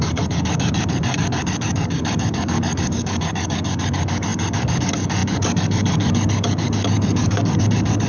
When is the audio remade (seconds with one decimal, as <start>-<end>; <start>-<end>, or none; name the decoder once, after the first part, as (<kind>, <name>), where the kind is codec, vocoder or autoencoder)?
0.0-8.1 (codec, DAC)